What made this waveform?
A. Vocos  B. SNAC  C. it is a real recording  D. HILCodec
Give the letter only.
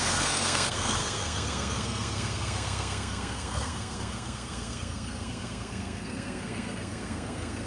B